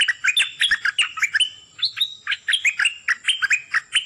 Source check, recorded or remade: recorded